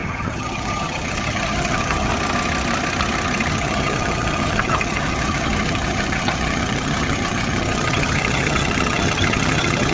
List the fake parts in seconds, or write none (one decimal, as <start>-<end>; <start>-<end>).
0.0-2.1; 3.5-9.9